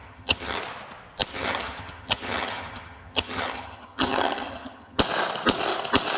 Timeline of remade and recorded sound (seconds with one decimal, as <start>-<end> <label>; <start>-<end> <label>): 0.0-0.6 remade; 0.6-1.3 recorded; 1.3-5.0 remade; 5.0-6.2 recorded